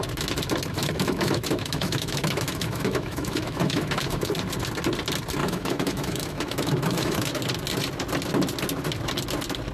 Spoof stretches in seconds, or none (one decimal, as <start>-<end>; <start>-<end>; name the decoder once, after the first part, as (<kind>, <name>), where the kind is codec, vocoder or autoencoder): 0.8-4.3 (autoencoder, DAC-VAE); 5.4-7.4